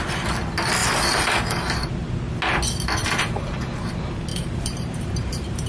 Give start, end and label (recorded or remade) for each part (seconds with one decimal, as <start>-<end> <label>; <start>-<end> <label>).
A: 0.0-0.8 recorded; 0.8-1.9 remade; 1.9-3.0 recorded; 3.0-3.9 remade; 3.9-4.3 recorded; 4.3-5.7 remade